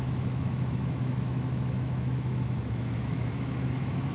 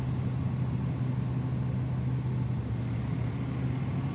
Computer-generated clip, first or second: first